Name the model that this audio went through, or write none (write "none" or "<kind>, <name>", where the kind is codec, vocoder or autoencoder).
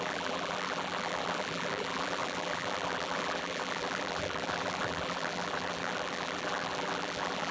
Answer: vocoder, BigVGAN v2